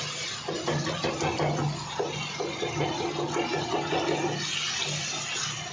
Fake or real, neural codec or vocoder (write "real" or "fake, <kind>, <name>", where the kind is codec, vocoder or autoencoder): real